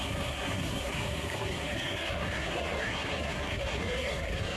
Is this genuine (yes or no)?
no